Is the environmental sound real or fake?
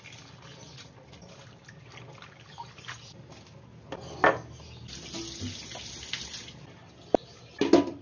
real